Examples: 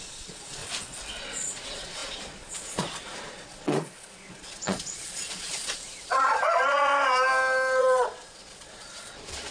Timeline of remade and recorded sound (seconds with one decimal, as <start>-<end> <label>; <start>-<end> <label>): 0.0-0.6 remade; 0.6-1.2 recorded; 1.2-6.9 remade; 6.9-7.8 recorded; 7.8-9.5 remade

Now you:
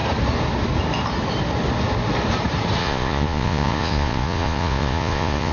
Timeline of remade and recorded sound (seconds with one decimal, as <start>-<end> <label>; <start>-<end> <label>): 0.0-2.8 recorded; 2.8-5.5 remade

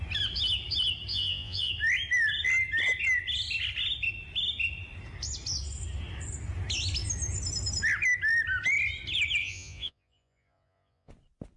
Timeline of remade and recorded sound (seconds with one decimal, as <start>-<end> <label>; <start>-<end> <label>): 0.0-1.1 recorded; 1.1-1.7 remade; 1.7-9.4 recorded; 9.4-11.1 remade; 11.1-11.6 recorded